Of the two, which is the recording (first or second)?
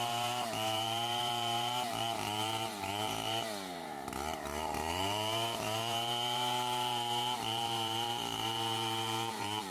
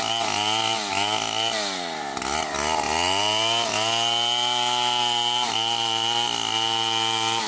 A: second